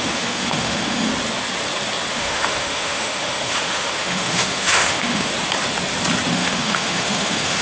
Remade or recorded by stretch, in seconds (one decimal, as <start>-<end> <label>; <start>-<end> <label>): 0.0-1.1 remade; 1.1-2.1 recorded; 2.1-5.3 remade; 5.3-6.3 recorded; 6.3-7.6 remade